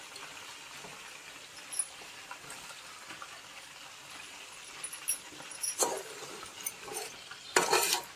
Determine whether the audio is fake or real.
real